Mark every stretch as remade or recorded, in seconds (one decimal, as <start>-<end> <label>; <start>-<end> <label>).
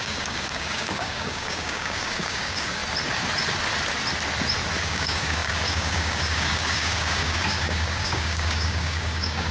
0.0-2.8 remade; 2.8-4.8 recorded; 4.8-9.5 remade